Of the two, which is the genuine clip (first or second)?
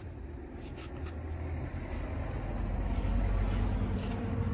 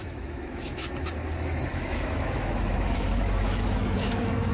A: first